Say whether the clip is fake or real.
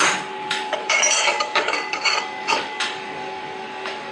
fake